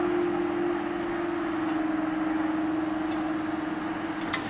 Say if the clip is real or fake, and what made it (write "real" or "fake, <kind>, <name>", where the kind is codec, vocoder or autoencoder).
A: real